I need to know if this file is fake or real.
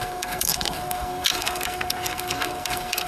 fake